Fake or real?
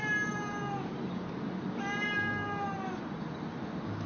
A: real